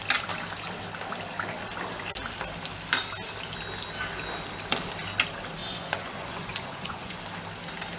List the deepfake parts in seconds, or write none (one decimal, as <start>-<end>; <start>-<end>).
5.6-7.2